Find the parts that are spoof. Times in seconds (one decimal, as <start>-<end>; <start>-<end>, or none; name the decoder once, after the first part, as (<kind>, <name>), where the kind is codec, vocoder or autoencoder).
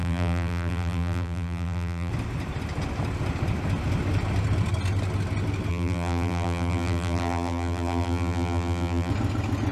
0.0-2.1 (vocoder, BigVGAN v2); 5.7-9.1